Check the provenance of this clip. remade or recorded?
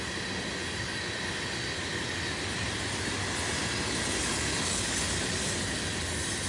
recorded